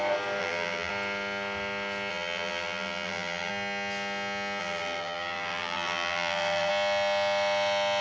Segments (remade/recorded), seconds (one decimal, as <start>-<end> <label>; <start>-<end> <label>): 0.0-0.4 recorded; 0.4-0.9 remade; 0.9-2.1 recorded; 2.1-3.5 remade; 3.5-4.6 recorded; 4.6-6.7 remade; 6.7-8.0 recorded